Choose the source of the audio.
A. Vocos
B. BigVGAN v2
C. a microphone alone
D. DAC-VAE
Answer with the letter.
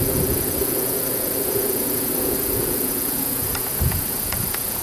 A